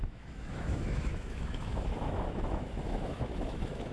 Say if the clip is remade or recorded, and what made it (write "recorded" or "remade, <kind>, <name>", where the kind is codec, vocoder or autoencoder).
remade, autoencoder, DAC-VAE